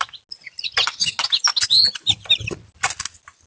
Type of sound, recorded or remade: recorded